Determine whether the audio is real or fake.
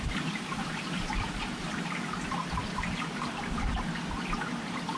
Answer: fake